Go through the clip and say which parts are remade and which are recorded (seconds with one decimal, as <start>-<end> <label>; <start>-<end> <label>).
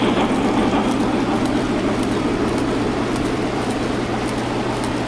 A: 0.0-0.6 recorded; 0.6-3.7 remade; 3.7-5.1 recorded